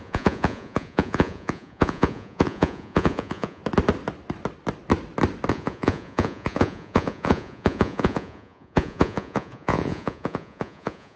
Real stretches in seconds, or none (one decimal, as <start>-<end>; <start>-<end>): 3.6-5.5